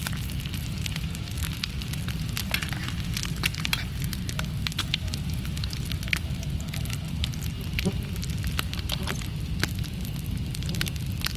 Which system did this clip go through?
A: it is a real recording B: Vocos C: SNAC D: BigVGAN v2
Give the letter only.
A